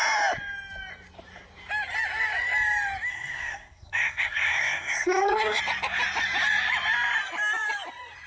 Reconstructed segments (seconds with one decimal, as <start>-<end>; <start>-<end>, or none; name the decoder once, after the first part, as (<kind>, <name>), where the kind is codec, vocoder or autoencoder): 3.1-5.6 (codec, SNAC)